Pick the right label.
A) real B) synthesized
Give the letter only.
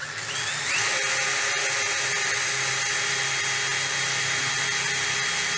A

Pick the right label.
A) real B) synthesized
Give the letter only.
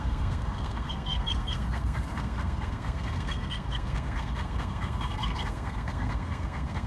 B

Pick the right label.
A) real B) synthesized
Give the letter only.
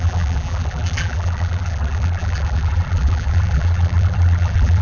B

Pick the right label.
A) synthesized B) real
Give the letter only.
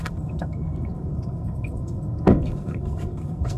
A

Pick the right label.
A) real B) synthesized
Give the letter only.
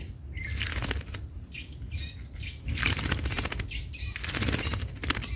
A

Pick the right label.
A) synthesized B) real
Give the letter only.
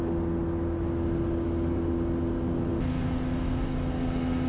B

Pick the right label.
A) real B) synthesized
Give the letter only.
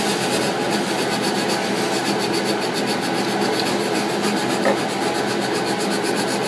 A